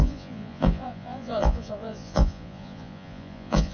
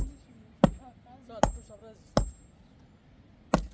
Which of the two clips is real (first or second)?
second